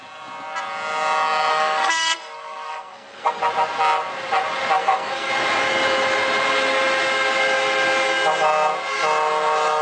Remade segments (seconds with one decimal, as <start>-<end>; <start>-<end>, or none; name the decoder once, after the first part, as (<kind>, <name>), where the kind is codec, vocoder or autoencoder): 1.5-3.4 (codec, SNAC); 4.8-5.3